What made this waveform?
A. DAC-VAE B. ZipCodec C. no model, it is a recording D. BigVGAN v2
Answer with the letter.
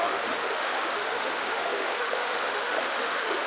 A